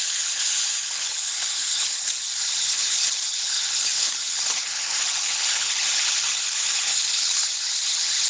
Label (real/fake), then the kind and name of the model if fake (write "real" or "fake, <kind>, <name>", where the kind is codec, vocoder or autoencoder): fake, codec, HILCodec